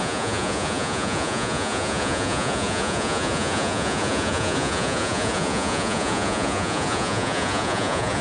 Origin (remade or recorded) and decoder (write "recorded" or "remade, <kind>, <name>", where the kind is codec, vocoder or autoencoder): remade, vocoder, Vocos